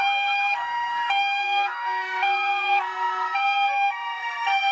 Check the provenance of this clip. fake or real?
fake